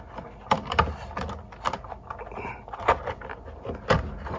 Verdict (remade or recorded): recorded